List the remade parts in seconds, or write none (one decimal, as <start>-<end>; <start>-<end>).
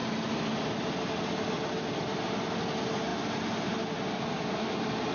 none